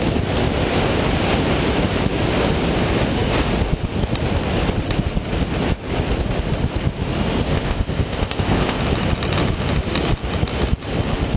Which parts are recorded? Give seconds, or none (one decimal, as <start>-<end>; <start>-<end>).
0.0-7.5; 8.8-11.4